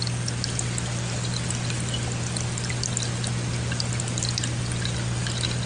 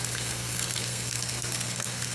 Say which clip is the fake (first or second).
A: second